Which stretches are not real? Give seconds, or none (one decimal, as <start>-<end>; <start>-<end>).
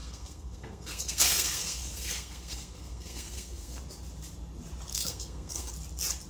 0.0-3.8; 4.9-5.7